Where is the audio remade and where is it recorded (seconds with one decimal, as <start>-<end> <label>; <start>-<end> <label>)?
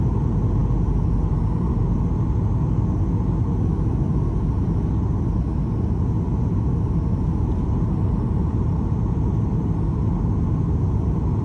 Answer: 0.0-11.4 recorded